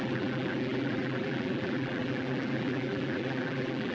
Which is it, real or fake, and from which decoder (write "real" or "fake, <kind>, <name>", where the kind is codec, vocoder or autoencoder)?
fake, vocoder, BigVGAN v2